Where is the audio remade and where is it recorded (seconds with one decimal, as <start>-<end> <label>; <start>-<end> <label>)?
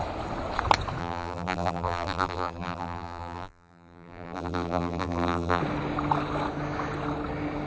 0.0-1.0 recorded; 1.0-5.6 remade; 5.6-7.7 recorded